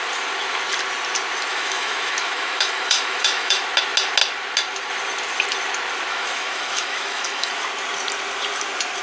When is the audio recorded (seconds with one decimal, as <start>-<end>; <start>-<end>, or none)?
0.0-1.5; 3.6-6.1; 7.5-9.0

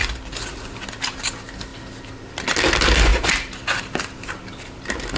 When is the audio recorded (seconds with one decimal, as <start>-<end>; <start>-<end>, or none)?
0.0-5.2

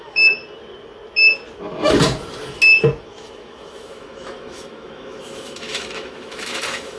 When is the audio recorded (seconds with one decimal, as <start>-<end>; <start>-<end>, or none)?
0.4-3.0

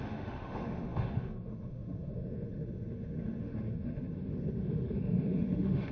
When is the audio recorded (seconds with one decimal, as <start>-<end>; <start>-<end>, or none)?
none

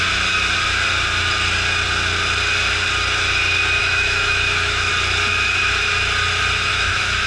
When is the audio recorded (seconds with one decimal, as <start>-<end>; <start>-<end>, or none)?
0.0-3.8; 4.9-6.7

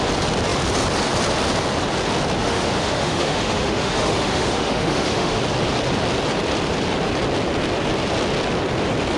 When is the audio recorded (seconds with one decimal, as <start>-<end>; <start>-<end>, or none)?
0.0-2.4; 5.4-9.2

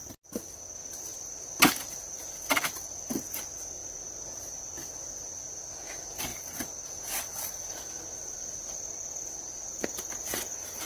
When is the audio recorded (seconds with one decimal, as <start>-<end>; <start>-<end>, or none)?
0.0-10.9

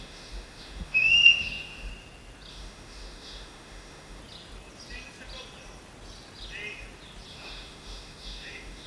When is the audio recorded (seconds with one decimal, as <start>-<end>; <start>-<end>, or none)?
1.9-2.5; 4.2-7.3